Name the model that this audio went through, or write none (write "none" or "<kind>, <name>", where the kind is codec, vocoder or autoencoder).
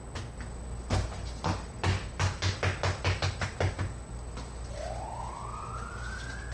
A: none